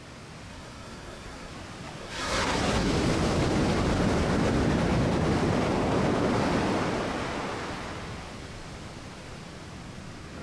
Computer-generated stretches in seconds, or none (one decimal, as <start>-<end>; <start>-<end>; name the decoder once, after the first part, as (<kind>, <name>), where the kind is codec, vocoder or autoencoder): 0.5-1.5 (codec, SNAC); 2.0-2.9